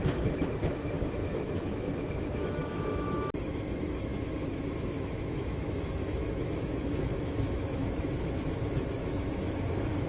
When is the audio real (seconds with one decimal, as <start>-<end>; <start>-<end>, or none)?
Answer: none